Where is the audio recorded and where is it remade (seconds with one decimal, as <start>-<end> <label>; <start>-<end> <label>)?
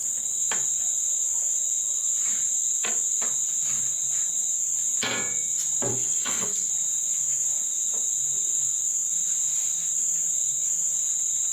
0.0-5.9 recorded; 5.9-6.7 remade; 6.7-11.5 recorded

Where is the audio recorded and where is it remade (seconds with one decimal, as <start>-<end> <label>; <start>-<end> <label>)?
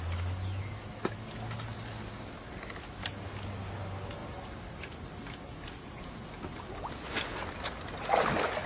0.0-8.7 recorded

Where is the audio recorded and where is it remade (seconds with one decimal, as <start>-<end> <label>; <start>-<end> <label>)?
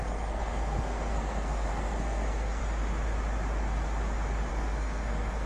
0.0-2.6 remade; 2.6-4.5 recorded; 4.5-5.5 remade